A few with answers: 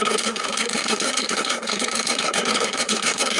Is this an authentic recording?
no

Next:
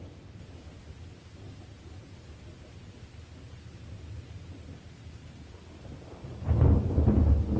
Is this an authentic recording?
yes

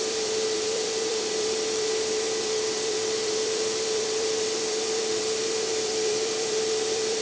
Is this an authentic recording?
no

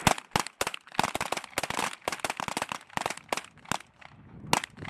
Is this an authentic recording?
yes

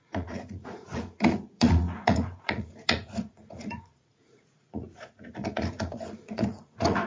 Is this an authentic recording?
no